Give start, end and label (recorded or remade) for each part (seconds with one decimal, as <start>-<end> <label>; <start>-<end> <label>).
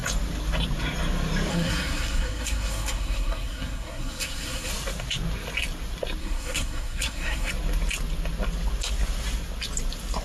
0.0-1.5 recorded; 1.5-4.7 remade; 4.7-6.2 recorded; 6.2-7.5 remade; 7.5-10.2 recorded